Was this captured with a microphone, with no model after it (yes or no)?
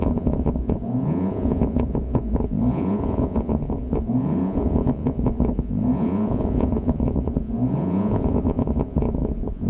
no